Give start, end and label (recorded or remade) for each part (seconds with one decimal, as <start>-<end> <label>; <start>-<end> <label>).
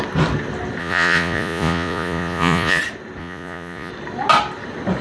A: 0.0-0.8 recorded; 0.8-2.8 remade; 2.8-3.2 recorded; 3.2-3.9 remade; 3.9-5.0 recorded